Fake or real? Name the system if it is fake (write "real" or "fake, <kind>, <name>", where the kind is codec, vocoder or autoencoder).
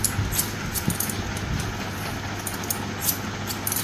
real